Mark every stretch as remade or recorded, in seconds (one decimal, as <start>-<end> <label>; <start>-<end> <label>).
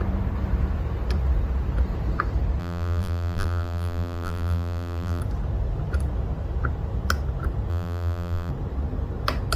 0.0-2.6 recorded; 2.6-5.2 remade; 5.2-7.7 recorded; 7.7-8.5 remade; 8.5-9.6 recorded